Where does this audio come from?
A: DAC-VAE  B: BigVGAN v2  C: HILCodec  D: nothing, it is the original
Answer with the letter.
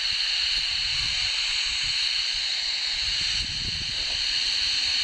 D